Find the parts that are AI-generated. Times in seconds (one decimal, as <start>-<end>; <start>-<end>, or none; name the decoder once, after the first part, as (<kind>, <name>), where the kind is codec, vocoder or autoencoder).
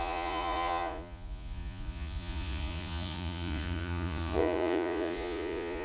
0.0-5.8 (vocoder, Vocos)